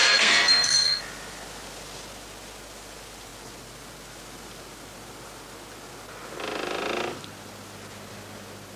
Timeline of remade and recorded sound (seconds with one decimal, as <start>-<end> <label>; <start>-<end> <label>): 0.0-1.0 remade; 1.0-8.8 recorded